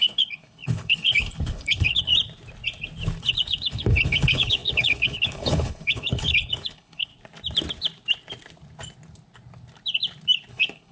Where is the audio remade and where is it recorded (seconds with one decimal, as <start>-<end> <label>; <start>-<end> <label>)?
0.0-2.1 remade; 2.1-3.2 recorded; 3.2-7.1 remade; 7.1-10.5 recorded; 10.5-10.9 remade